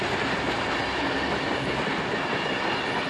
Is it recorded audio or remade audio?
recorded